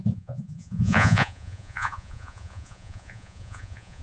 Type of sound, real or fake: fake